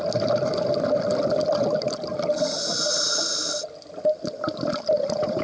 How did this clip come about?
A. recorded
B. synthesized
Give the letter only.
A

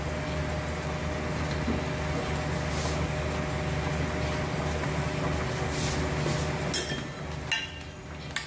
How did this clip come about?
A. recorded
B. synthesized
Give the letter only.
A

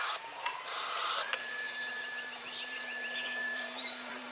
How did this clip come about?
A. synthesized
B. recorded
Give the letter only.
A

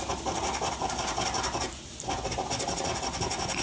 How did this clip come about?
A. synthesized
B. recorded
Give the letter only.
B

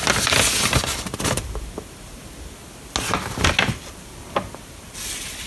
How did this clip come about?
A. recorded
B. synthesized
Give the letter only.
A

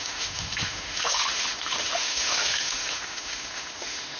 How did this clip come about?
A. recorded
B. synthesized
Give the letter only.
B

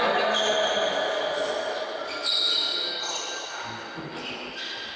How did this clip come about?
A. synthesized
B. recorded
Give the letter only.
B